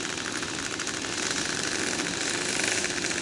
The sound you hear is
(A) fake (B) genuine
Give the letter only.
B